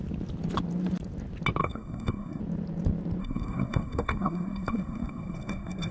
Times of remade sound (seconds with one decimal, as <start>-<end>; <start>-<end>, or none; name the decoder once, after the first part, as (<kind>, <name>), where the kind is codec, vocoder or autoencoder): 1.6-2.4 (codec, SNAC); 3.2-5.9

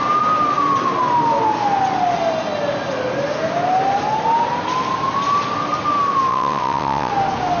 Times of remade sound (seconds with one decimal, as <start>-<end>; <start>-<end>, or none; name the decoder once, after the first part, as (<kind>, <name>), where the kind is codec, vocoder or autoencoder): 6.3-7.1 (vocoder, WaveNeXt)